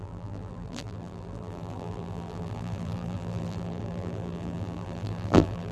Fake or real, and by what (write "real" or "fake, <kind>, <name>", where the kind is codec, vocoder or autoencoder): fake, vocoder, BigVGAN v2